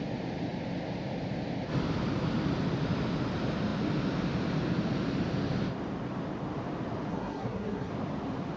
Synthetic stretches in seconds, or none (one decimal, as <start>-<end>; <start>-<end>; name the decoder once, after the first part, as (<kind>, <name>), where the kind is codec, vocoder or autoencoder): 7.1-7.9 (codec, SNAC)